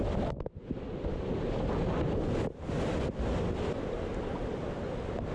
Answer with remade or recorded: recorded